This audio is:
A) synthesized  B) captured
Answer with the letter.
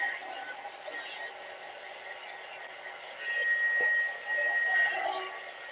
B